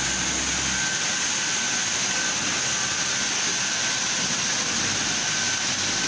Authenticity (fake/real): real